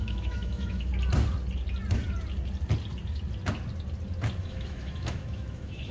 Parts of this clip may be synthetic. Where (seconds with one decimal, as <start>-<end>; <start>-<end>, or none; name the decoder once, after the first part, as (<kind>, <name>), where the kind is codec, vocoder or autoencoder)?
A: 0.0-0.9 (autoencoder, DAC-VAE); 4.4-5.9